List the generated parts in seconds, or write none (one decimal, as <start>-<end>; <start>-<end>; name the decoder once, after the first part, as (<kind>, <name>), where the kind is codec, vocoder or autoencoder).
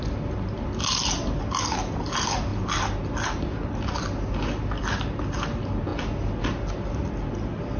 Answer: none